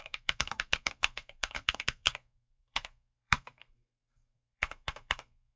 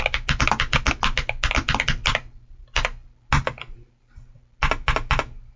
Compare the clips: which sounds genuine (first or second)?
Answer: second